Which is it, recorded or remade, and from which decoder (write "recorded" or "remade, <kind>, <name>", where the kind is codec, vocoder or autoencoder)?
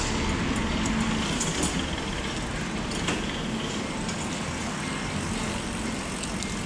recorded